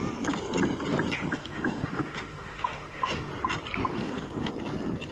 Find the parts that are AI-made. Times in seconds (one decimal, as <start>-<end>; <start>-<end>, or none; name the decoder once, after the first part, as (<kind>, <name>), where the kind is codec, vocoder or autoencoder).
1.3-3.3 (autoencoder, DAC-VAE); 3.9-4.5